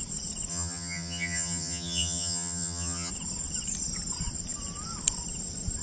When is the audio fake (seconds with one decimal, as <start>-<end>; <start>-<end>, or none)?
0.5-3.1